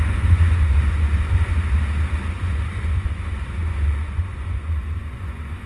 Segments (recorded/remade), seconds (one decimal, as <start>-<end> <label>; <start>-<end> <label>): 0.0-1.5 remade; 1.5-2.3 recorded; 2.3-5.7 remade